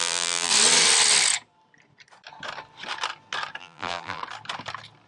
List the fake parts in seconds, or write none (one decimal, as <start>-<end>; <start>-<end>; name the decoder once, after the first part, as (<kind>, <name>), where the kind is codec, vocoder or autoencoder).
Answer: 0.0-0.5 (vocoder, BigVGAN v2); 3.6-4.2